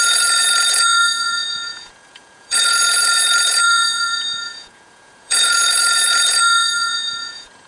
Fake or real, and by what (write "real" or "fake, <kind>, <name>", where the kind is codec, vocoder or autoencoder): fake, vocoder, Vocos